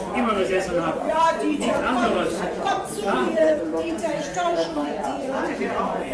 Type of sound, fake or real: fake